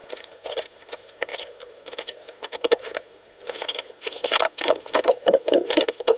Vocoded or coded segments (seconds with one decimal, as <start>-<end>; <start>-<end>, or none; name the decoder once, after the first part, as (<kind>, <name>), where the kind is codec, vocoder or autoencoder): 0.0-6.2 (codec, SNAC)